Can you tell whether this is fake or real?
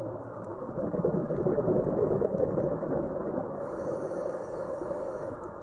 fake